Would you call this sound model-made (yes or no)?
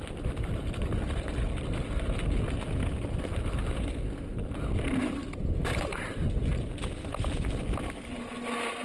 no